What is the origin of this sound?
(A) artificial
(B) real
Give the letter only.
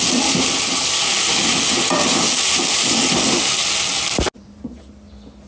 B